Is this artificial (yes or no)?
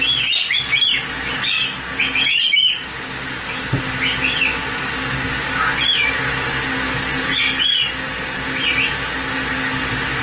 no